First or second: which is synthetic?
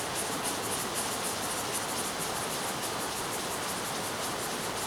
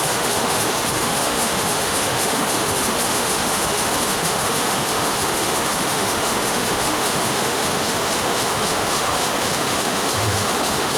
second